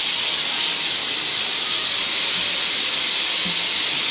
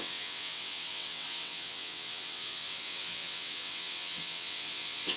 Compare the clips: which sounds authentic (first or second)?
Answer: first